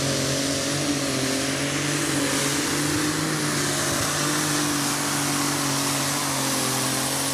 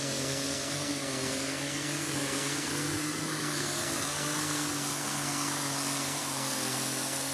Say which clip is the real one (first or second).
first